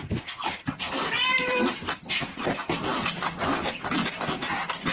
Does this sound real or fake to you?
fake